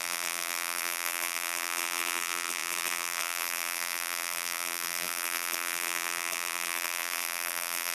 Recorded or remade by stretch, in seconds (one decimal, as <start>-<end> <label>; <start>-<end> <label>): 0.0-7.9 remade